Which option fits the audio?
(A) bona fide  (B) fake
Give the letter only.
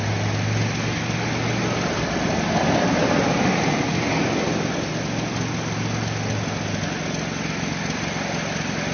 A